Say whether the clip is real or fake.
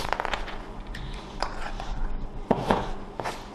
fake